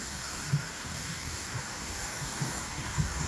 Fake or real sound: fake